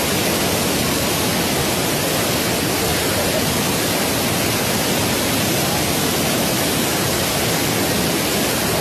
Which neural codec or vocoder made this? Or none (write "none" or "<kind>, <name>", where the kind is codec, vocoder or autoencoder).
none